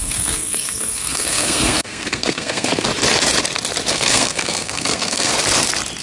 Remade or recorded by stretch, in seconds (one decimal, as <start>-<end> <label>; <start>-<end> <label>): 0.0-2.9 remade; 2.9-3.9 recorded; 3.9-5.3 remade; 5.3-6.0 recorded